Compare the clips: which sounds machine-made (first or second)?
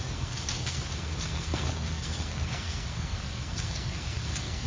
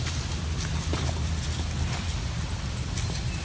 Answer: first